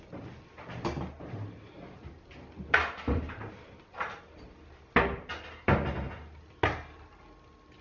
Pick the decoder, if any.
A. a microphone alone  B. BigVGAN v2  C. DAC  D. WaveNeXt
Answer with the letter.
A